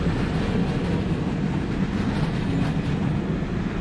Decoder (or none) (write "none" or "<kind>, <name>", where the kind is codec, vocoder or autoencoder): none